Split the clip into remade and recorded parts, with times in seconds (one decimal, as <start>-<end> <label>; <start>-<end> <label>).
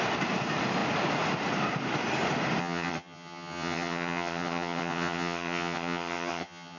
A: 0.0-2.6 recorded; 2.6-6.8 remade